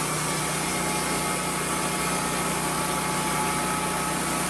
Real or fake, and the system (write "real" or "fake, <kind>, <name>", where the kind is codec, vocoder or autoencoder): real